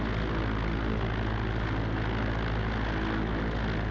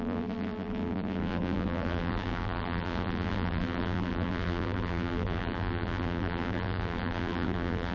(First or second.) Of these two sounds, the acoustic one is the first